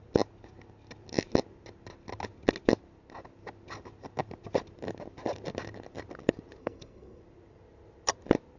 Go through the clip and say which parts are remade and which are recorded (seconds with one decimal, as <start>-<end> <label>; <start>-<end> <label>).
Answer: 0.0-6.6 recorded; 6.6-7.2 remade; 7.2-8.6 recorded